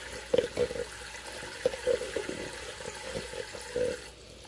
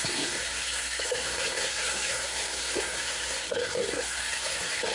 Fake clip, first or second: second